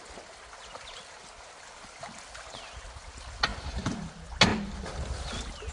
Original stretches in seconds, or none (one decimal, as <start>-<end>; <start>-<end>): 0.0-3.5; 4.1-5.7

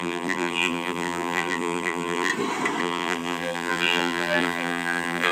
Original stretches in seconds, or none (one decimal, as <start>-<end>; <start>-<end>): 2.3-2.8

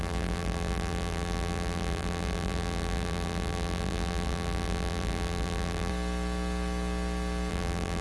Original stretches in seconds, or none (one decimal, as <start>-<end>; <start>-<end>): 5.9-7.5